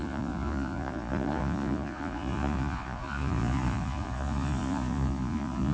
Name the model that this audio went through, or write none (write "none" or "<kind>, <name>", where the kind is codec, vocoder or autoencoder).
vocoder, Vocos